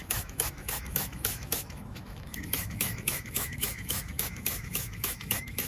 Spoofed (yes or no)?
yes